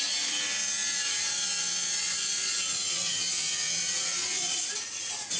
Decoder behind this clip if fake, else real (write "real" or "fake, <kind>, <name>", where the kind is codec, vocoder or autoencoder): fake, vocoder, Vocos